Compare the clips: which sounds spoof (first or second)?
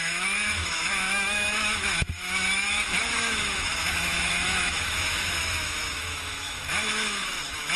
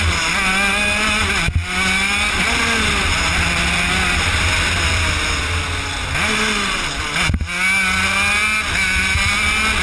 first